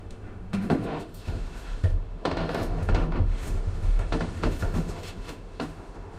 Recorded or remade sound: remade